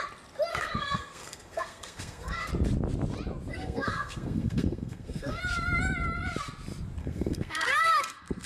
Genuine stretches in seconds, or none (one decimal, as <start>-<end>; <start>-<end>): 0.0-0.5; 2.5-3.5; 5.4-7.0

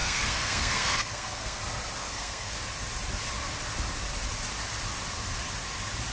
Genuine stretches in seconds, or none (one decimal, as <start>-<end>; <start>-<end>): 1.6-2.0; 2.6-6.1

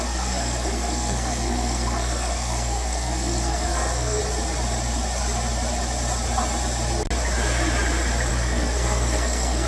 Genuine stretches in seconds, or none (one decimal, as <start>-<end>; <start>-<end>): 4.2-8.3

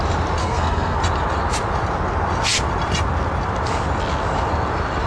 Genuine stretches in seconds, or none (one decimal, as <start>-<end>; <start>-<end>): 0.0-0.4; 1.0-5.1